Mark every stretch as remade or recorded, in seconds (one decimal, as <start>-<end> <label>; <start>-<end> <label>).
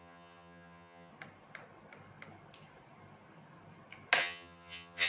0.0-1.1 remade; 1.1-4.2 recorded; 4.2-5.1 remade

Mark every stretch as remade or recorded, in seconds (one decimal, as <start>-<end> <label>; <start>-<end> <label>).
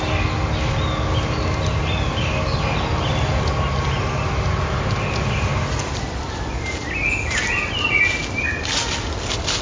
0.0-9.6 recorded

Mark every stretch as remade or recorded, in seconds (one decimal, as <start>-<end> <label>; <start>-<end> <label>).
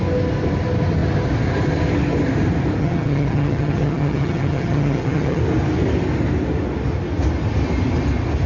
0.0-2.8 recorded; 2.8-5.4 remade; 5.4-8.5 recorded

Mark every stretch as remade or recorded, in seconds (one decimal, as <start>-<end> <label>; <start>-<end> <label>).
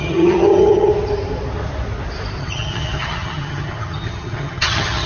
0.0-0.9 remade; 0.9-2.4 recorded; 2.4-5.1 remade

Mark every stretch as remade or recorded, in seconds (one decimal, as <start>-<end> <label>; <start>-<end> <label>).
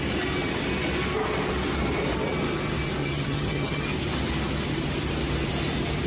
0.0-3.0 recorded; 3.0-3.8 remade; 3.8-6.1 recorded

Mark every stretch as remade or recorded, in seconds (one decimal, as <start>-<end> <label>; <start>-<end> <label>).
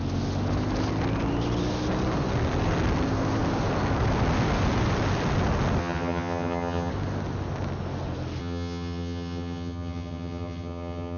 0.0-5.8 recorded; 5.8-6.9 remade; 6.9-8.4 recorded; 8.4-11.2 remade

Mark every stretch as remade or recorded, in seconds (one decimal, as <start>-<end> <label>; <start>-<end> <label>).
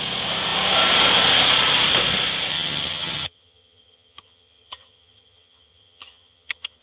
0.0-2.5 recorded; 2.5-6.8 remade